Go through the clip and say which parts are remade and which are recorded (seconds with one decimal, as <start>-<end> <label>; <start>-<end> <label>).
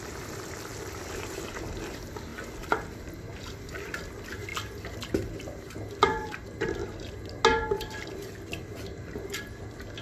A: 0.0-10.0 recorded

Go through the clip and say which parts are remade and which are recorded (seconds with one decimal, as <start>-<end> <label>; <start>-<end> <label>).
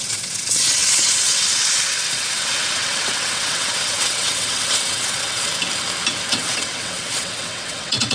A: 0.0-5.5 remade; 5.5-6.3 recorded; 6.3-8.1 remade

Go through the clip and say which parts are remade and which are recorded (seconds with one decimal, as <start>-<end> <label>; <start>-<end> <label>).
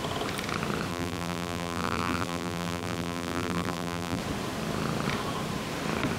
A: 0.0-0.9 recorded; 0.9-4.2 remade; 4.2-6.2 recorded